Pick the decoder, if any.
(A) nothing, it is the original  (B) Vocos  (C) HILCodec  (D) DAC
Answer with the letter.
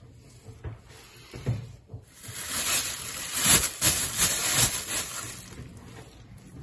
A